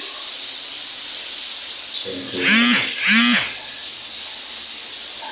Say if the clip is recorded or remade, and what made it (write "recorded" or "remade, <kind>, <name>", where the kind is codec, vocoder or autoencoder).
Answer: recorded